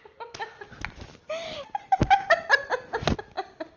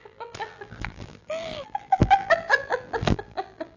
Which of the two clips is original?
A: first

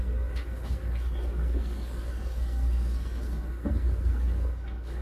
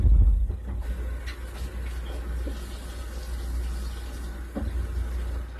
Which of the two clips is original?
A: second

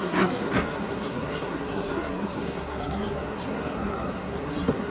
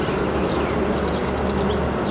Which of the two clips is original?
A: second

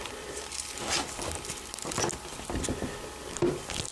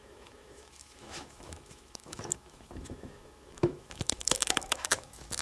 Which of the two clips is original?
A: first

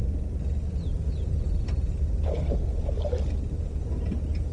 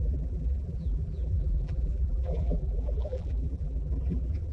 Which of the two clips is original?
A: first